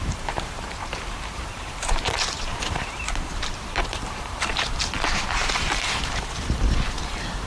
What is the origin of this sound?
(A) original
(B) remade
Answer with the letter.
B